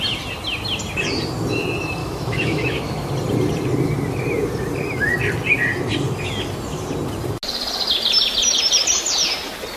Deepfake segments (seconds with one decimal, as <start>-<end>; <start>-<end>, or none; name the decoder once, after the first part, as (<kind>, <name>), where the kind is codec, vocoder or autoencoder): 2.0-3.1 (autoencoder, DAC-VAE)